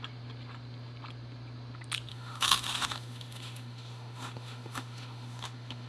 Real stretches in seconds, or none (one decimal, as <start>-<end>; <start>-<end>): 0.0-2.1

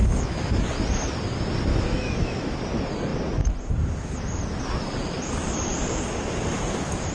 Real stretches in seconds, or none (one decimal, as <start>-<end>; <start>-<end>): 0.6-1.7; 2.6-7.1